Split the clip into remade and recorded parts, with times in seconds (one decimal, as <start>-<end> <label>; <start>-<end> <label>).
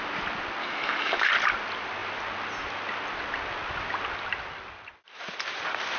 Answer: 0.0-0.6 recorded; 0.6-1.3 remade; 1.3-6.0 recorded